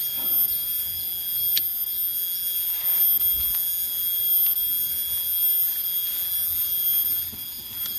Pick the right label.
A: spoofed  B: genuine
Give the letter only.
B